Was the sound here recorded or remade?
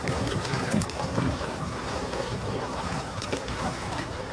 remade